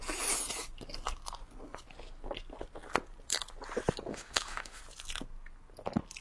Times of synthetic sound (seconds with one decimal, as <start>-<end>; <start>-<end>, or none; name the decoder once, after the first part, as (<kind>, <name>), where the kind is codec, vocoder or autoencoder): 4.1-4.8 (autoencoder, DAC-VAE)